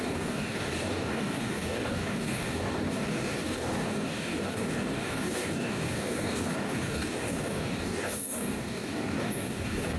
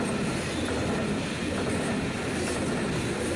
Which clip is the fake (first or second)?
first